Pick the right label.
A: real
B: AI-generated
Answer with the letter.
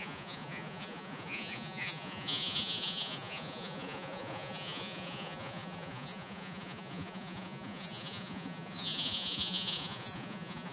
B